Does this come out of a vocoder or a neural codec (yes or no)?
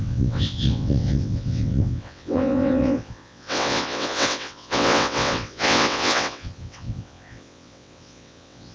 yes